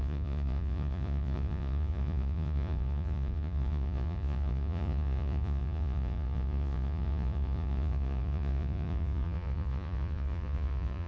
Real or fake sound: fake